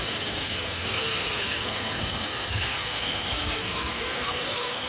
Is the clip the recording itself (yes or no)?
no